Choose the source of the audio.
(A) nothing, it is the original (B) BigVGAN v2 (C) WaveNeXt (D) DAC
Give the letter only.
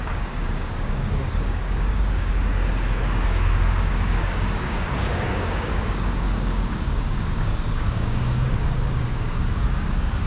D